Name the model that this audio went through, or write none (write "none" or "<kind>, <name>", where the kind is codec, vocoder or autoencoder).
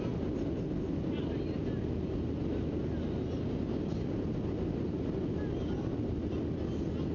none